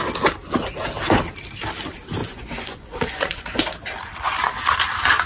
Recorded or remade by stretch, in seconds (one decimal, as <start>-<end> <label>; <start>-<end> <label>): 0.0-2.2 recorded; 2.2-3.6 remade; 3.6-5.3 recorded